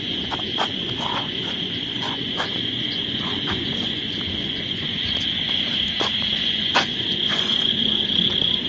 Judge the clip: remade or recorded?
remade